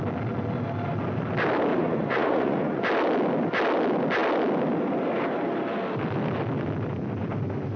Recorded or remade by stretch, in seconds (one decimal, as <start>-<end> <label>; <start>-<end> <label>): 0.0-1.7 recorded; 1.7-2.8 remade; 2.8-7.8 recorded